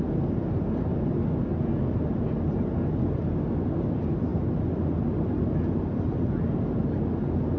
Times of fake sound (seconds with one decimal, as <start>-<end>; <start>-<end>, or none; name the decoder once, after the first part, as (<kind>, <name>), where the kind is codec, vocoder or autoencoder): none